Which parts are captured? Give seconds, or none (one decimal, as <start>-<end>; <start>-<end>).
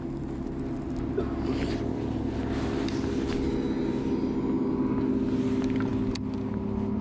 0.0-7.0